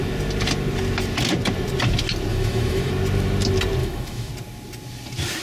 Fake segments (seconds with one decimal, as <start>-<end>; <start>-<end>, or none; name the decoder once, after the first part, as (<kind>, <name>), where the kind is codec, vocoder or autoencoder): 2.3-2.9 (autoencoder, DAC-VAE); 3.8-4.3